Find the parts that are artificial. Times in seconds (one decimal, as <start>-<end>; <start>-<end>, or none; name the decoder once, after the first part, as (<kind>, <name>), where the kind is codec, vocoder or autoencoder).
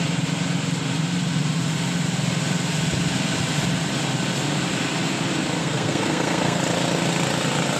5.6-6.6 (codec, SNAC)